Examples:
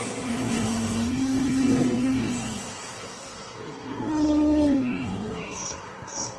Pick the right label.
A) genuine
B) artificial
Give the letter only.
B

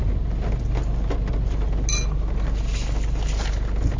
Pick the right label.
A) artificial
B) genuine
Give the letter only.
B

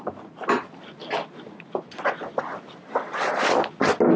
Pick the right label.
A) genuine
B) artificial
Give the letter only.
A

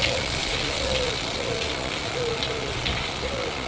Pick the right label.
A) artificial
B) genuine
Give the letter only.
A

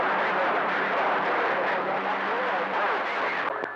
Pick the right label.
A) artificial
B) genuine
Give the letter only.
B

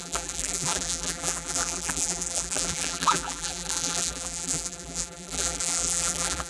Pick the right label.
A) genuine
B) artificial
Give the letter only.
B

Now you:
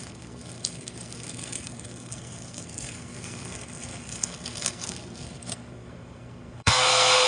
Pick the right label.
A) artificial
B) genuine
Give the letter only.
A